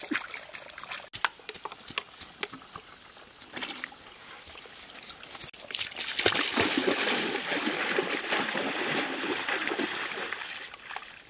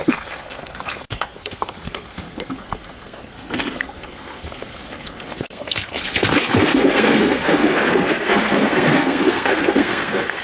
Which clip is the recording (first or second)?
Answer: first